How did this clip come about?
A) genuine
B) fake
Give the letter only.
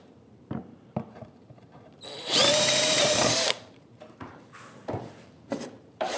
B